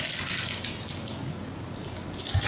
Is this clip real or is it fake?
real